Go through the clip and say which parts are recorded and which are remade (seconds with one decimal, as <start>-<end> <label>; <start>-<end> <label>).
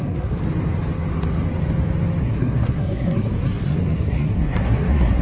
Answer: 0.0-0.4 remade; 0.4-2.2 recorded; 2.2-5.2 remade